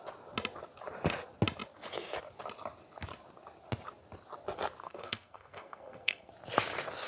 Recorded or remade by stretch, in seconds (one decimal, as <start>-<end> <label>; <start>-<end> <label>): 0.0-4.8 recorded; 4.8-6.3 remade; 6.3-7.1 recorded